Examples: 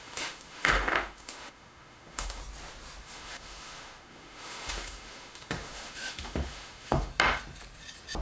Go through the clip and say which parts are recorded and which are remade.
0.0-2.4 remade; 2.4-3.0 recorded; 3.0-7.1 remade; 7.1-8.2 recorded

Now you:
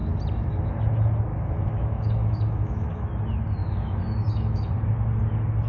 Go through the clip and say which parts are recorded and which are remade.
0.0-1.3 recorded; 1.3-3.1 remade; 3.1-3.6 recorded; 3.6-4.7 remade; 4.7-5.7 recorded

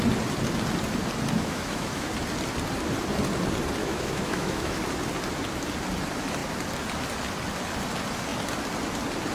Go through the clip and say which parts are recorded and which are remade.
0.0-1.4 recorded; 1.4-2.1 remade; 2.1-3.8 recorded; 3.8-4.8 remade; 4.8-9.3 recorded

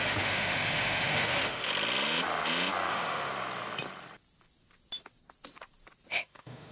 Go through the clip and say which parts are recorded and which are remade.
0.0-1.7 remade; 1.7-2.9 recorded; 2.9-3.3 remade; 3.3-6.1 recorded; 6.1-6.7 remade

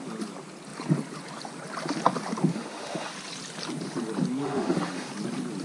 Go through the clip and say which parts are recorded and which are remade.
0.0-2.5 recorded; 2.5-3.1 remade; 3.1-4.4 recorded; 4.4-5.1 remade; 5.1-5.6 recorded

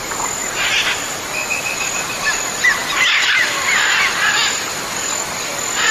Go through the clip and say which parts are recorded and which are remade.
0.0-5.9 recorded